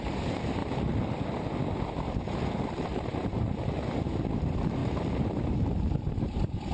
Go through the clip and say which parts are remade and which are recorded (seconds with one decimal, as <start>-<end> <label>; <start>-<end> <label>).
0.0-0.6 remade; 0.6-2.2 recorded; 2.2-6.7 remade